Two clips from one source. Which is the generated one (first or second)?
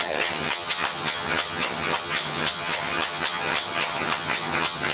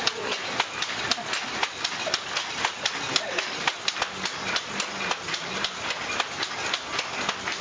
first